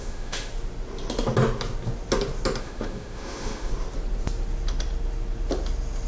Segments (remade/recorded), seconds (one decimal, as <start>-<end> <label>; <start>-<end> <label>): 0.0-0.5 remade; 0.5-2.6 recorded; 2.6-3.7 remade; 3.7-6.1 recorded